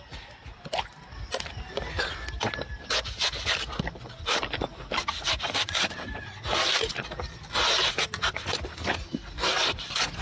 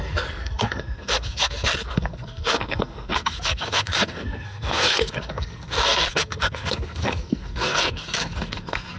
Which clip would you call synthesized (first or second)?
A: second